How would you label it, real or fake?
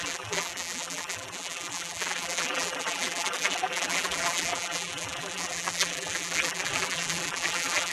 fake